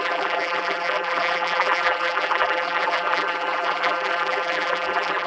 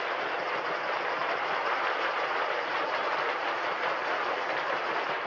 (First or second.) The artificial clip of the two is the first